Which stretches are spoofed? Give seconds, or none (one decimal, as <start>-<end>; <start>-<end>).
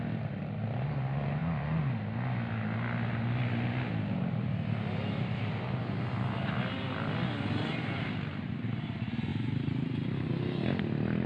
none